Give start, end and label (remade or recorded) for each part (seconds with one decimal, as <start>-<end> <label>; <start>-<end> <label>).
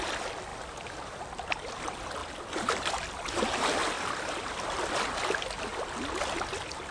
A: 0.0-0.5 recorded; 0.5-1.7 remade; 1.7-2.2 recorded; 2.2-3.3 remade; 3.3-3.8 recorded; 3.8-5.0 remade; 5.0-6.9 recorded